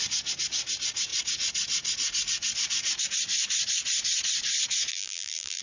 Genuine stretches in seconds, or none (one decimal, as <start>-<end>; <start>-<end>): 0.0-4.9